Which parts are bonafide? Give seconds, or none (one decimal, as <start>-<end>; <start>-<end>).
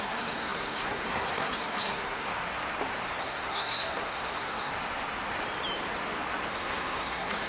2.3-3.2; 4.7-6.5